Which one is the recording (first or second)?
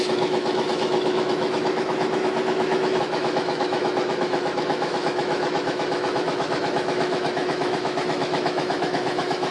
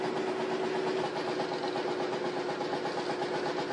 second